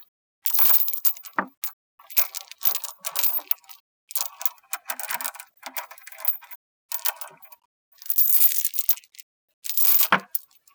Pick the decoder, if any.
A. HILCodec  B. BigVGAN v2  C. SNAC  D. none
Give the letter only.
D